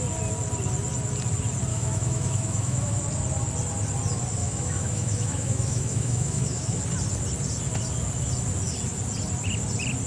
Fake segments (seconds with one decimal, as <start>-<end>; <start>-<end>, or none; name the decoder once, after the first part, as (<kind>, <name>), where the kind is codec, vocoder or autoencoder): 1.7-3.0 (autoencoder, DAC-VAE); 4.4-6.8